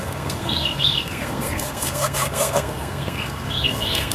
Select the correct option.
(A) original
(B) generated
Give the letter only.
B